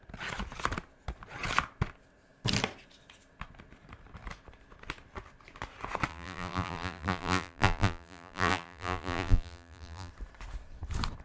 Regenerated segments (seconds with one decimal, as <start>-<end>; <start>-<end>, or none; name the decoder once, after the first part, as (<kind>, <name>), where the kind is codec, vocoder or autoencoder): 6.1-10.1 (vocoder, BigVGAN v2)